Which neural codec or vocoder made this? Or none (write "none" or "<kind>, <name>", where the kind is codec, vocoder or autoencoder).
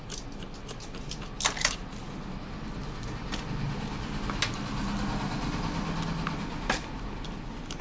none